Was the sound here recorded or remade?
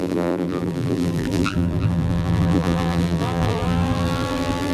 remade